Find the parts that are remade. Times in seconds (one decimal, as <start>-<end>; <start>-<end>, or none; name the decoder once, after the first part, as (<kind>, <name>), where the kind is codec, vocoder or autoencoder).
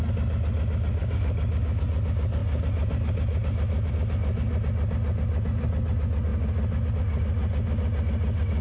1.0-1.8 (codec, DAC)